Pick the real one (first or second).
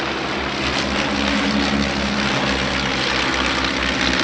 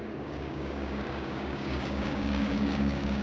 first